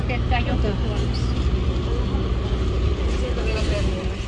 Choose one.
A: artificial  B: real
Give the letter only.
B